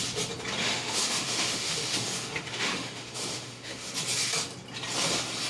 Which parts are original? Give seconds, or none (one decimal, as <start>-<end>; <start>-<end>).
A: 0.0-0.6; 3.9-5.5